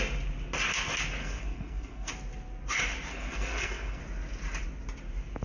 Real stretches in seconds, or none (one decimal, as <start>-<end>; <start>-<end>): 0.0-1.2; 2.1-3.1; 4.0-5.4